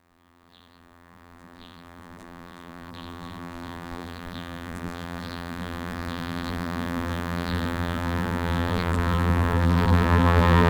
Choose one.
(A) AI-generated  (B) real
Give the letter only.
A